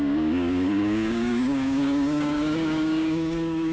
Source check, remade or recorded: remade